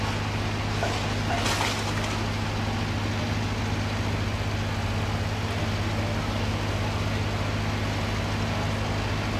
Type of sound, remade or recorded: recorded